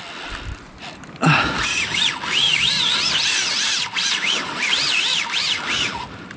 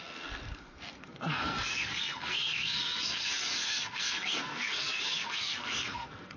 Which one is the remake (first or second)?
second